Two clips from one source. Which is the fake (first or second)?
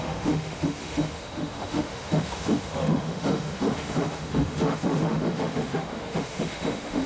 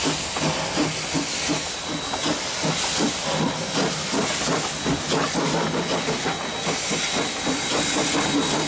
first